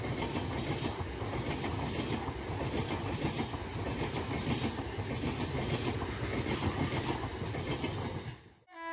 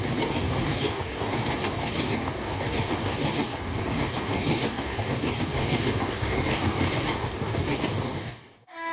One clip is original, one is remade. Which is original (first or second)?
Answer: first